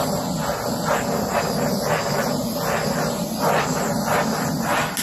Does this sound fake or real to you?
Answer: real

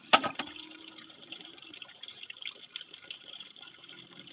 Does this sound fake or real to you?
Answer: fake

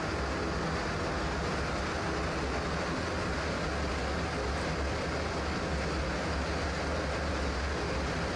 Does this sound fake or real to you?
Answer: real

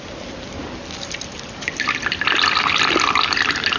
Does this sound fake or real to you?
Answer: real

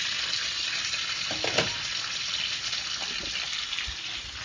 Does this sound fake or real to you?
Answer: fake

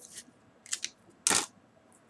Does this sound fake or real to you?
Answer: real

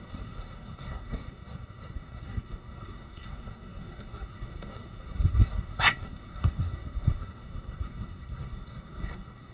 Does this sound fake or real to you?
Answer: fake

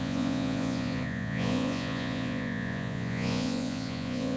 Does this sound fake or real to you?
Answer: fake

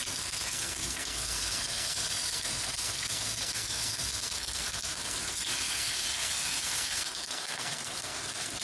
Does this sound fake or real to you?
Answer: fake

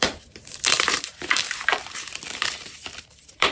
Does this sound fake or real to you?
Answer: fake